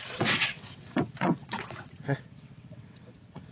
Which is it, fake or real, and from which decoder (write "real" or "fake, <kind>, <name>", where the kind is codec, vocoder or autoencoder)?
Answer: fake, vocoder, WaveNeXt